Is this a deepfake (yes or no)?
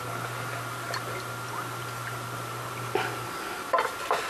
yes